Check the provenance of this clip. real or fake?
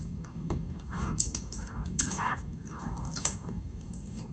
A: fake